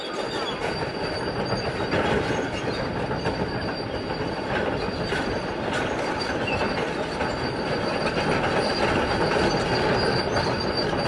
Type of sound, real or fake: real